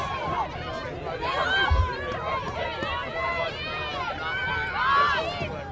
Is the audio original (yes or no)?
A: yes